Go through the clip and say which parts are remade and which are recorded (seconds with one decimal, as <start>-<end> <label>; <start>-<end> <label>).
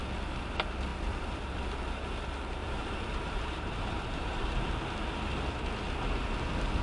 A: 0.0-2.6 recorded; 2.6-4.7 remade; 4.7-6.8 recorded